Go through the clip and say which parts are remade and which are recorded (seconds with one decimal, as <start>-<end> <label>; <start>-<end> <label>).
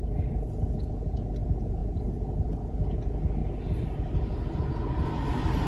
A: 0.0-5.7 recorded